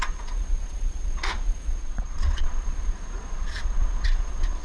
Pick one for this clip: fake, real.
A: fake